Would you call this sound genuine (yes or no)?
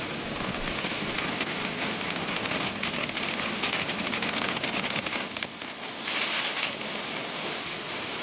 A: yes